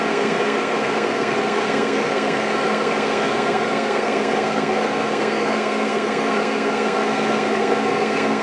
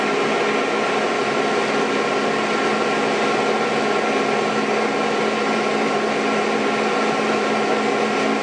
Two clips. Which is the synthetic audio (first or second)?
first